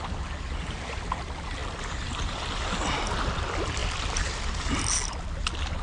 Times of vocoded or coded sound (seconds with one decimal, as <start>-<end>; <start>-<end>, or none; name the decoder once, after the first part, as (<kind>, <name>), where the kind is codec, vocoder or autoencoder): none